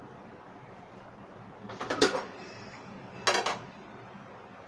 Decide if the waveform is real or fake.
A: real